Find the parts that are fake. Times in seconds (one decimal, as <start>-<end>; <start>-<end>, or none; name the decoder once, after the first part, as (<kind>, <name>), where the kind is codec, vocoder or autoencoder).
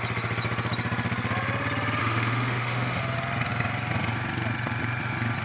2.0-3.0 (autoencoder, DAC-VAE)